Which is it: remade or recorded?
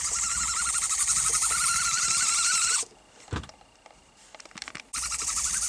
recorded